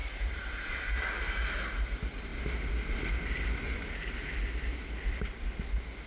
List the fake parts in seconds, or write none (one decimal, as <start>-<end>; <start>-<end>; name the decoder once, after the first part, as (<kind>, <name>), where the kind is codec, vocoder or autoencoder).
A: 0.0-1.1 (vocoder, BigVGAN v2)